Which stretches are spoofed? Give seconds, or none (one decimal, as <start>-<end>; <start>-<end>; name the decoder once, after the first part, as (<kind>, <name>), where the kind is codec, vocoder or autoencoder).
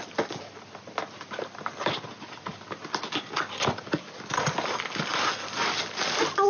none